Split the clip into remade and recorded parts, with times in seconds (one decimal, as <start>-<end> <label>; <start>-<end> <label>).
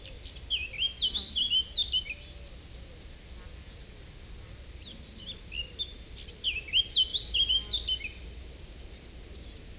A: 0.0-9.8 recorded